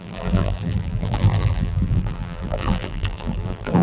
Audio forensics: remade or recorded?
remade